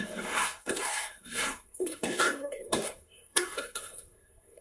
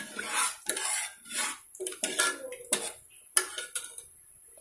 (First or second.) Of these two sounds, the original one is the second